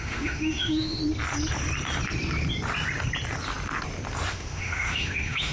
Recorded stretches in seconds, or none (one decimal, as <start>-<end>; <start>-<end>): 1.0-4.3